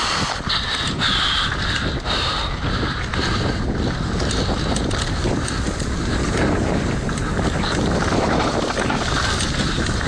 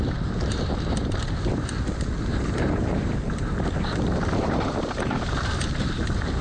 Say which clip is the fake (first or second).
second